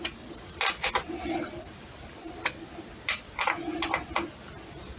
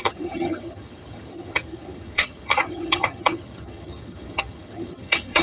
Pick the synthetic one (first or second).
second